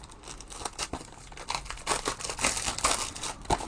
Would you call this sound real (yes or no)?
yes